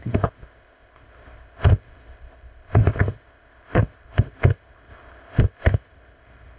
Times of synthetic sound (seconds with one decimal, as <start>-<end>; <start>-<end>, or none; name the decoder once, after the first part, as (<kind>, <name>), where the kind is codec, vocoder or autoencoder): 0.0-6.6 (codec, ZipCodec)